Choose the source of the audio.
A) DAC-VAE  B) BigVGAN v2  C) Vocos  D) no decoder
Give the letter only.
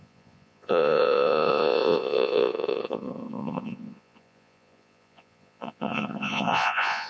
C